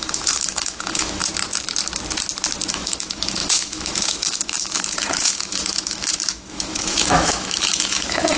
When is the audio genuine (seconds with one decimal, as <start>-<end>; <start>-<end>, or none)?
1.2-2.7